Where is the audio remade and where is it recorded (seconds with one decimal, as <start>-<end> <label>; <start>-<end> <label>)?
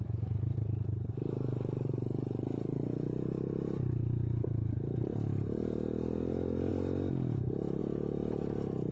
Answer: 0.0-8.9 recorded